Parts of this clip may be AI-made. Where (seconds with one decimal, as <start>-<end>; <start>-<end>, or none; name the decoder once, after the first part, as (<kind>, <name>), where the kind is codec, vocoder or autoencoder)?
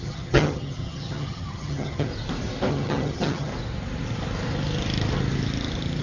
0.0-2.1 (vocoder, HiFi-GAN); 2.7-3.5